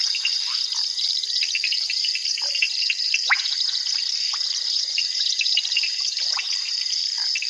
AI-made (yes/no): yes